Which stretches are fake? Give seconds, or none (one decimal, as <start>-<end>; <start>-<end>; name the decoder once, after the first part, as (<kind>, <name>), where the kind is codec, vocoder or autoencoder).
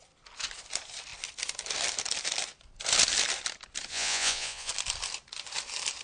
3.9-4.7 (vocoder, Vocos)